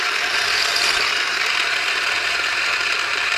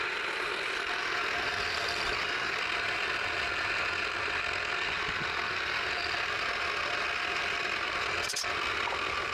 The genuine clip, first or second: second